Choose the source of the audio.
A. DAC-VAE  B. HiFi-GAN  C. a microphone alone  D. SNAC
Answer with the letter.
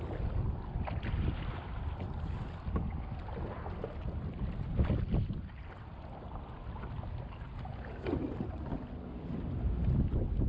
C